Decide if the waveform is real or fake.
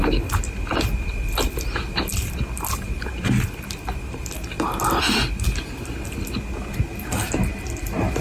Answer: real